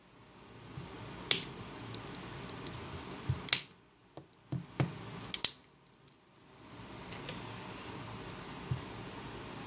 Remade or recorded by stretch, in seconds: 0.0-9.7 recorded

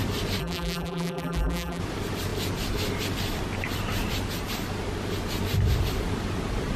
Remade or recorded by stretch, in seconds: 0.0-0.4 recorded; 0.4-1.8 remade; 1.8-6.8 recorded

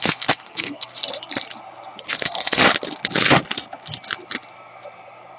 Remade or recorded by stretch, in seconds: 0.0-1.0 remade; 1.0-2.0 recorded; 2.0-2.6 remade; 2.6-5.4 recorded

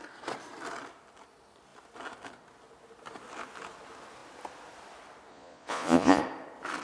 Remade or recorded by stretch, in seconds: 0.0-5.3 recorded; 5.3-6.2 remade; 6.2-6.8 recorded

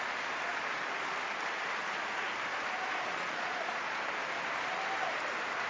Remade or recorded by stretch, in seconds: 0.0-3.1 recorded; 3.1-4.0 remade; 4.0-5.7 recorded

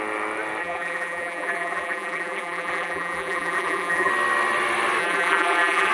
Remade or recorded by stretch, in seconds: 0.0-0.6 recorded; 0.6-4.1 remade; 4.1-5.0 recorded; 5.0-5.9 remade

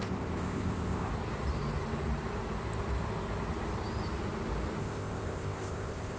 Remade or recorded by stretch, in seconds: 0.0-1.1 remade; 1.1-4.8 recorded; 4.8-6.2 remade

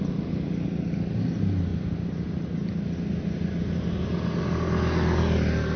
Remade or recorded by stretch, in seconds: 0.0-5.8 recorded